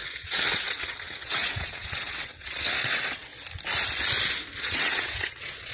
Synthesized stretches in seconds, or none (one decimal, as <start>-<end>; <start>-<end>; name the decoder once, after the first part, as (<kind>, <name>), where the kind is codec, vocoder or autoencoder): 0.0-3.3 (vocoder, WaveNeXt); 4.6-5.7